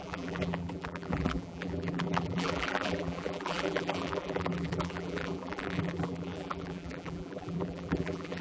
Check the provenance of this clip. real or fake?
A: fake